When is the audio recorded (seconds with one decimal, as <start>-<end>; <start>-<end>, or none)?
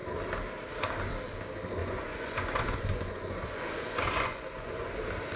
0.0-1.8; 5.0-5.4